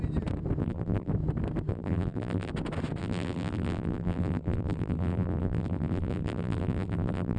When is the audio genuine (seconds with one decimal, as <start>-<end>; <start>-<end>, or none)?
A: 0.0-0.6; 1.1-1.7; 2.5-3.0

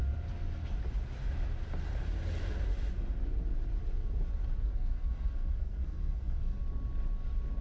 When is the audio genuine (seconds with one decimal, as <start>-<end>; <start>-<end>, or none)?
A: 0.0-4.6; 6.6-7.6

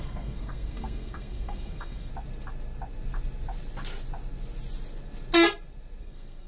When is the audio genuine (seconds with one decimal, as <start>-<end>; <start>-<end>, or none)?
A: 2.1-6.0

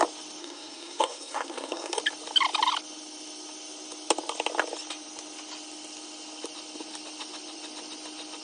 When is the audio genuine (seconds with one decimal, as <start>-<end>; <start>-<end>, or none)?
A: 0.0-0.4; 2.0-8.4

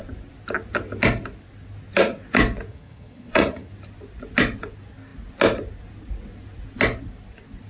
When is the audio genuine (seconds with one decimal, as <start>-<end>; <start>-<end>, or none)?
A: 0.0-2.7; 3.7-7.7

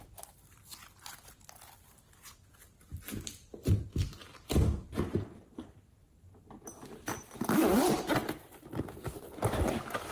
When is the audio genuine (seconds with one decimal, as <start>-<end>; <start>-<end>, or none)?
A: 0.0-10.1

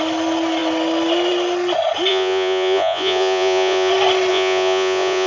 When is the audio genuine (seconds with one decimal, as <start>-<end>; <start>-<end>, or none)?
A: 0.0-2.1; 3.9-4.3

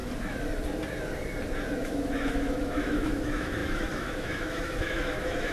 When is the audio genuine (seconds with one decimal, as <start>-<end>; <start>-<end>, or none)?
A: 0.0-1.8